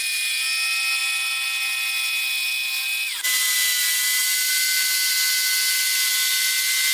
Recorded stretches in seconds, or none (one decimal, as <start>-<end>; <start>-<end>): 0.0-6.9